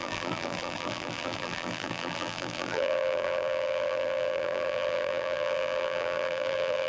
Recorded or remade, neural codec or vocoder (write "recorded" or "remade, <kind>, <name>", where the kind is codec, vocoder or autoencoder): remade, vocoder, BigVGAN v2